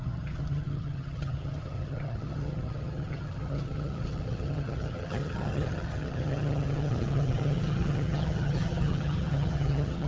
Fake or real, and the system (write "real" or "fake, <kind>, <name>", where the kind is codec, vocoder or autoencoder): fake, vocoder, HiFi-GAN